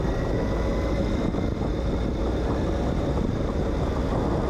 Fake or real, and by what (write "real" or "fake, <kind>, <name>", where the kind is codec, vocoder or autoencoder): real